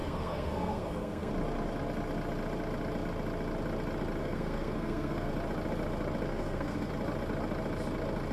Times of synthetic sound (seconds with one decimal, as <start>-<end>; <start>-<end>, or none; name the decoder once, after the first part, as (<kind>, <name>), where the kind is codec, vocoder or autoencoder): 0.0-1.3 (codec, SNAC); 4.2-5.3; 6.3-6.9